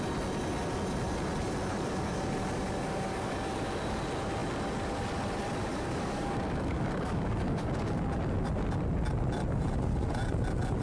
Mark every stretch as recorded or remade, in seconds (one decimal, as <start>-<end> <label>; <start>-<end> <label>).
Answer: 0.0-1.7 recorded; 1.7-4.0 remade; 4.0-5.7 recorded; 5.7-8.0 remade; 8.0-10.8 recorded